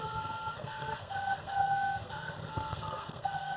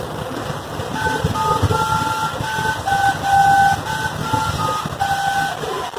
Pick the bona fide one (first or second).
second